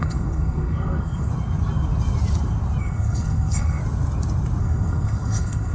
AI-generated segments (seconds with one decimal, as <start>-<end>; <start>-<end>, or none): 0.0-1.3; 2.8-3.8; 4.6-5.7